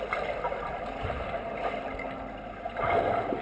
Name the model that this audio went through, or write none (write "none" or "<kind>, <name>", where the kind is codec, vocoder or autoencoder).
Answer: none